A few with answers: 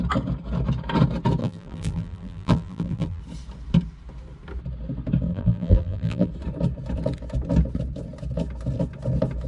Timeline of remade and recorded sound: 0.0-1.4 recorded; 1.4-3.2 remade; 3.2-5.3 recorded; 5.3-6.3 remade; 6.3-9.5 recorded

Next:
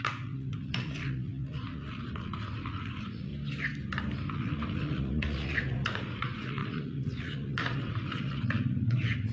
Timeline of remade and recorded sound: 0.0-3.3 remade; 3.3-4.3 recorded; 4.3-9.3 remade